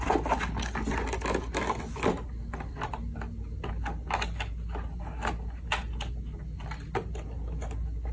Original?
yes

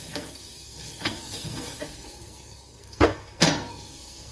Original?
no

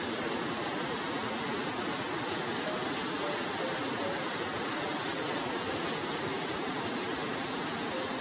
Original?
yes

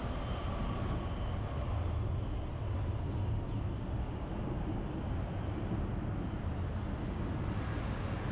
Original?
yes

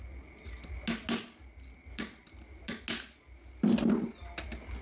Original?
yes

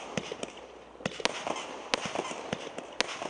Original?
yes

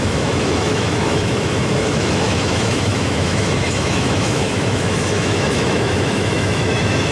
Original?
no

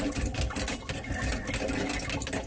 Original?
yes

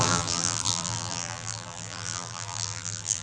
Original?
no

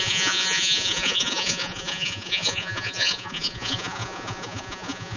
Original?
no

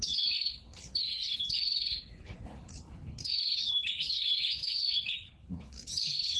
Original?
no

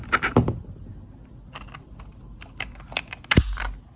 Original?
yes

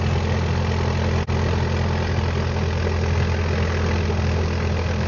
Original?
yes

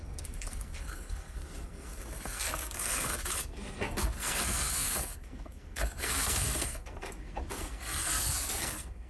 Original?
no